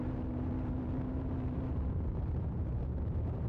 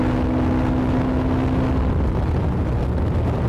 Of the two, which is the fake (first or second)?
first